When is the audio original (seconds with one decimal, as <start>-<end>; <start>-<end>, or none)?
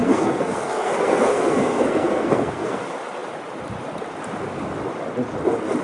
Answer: 2.8-5.8